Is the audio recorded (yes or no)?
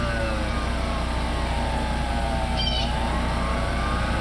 yes